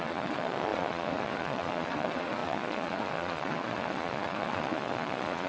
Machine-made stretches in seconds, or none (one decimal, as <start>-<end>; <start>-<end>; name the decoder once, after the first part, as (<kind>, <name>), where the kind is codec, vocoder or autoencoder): 0.0-5.5 (vocoder, Vocos)